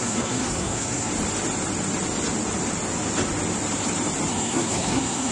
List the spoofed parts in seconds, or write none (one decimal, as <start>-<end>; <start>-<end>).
0.0-1.1; 4.3-5.3